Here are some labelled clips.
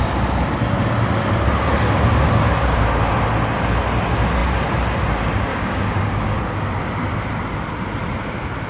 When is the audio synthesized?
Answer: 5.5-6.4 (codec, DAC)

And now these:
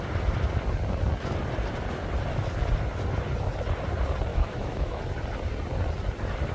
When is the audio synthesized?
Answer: 4.3-5.0 (autoencoder, DAC-VAE)

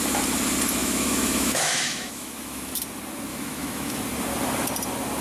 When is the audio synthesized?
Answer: 0.8-2.7 (autoencoder, DAC-VAE); 3.3-4.0

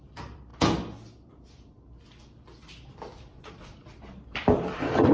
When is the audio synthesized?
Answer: 0.0-0.5 (vocoder, BigVGAN v2); 3.5-5.1

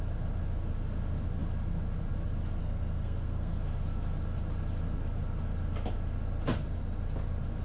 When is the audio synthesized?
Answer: 2.6-3.6 (codec, SNAC)

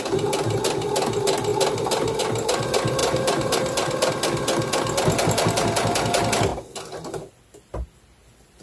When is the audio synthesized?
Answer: 3.0-4.1 (vocoder, BigVGAN v2)

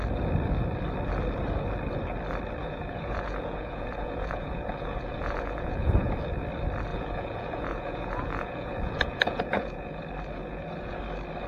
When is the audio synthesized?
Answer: 2.6-6.1 (vocoder, Vocos); 6.9-10.0; 10.4-11.0